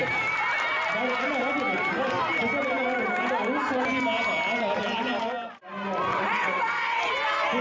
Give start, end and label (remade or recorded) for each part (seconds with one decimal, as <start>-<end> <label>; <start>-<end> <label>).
0.0-6.1 recorded; 6.1-7.0 remade; 7.0-7.6 recorded